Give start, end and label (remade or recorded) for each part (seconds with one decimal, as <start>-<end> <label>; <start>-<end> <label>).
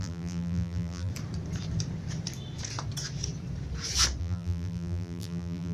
0.0-1.1 remade; 1.1-4.2 recorded; 4.2-5.7 remade